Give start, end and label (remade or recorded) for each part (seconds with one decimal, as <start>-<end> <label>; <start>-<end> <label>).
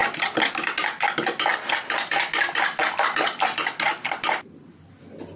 0.0-5.4 recorded